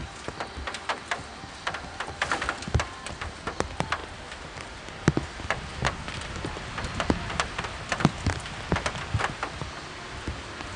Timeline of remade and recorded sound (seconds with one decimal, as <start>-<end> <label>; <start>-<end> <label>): 0.0-10.8 recorded